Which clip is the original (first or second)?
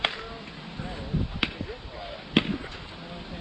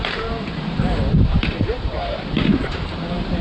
first